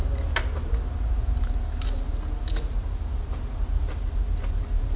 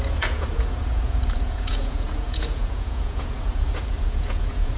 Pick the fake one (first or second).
second